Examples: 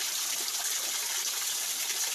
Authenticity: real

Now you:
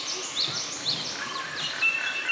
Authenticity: real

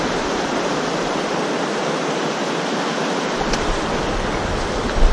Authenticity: real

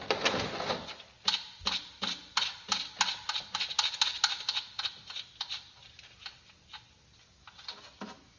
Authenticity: real